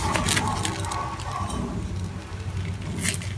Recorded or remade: recorded